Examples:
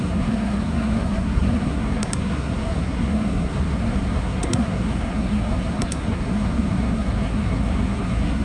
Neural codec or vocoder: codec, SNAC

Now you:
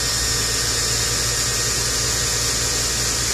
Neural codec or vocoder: none